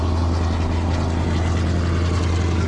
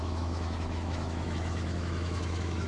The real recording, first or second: first